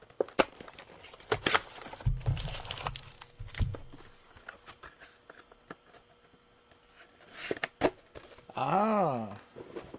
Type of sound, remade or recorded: recorded